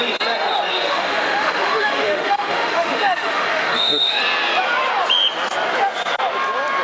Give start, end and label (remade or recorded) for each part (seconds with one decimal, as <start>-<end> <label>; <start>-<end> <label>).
0.0-0.7 recorded; 0.7-4.2 remade; 4.2-6.8 recorded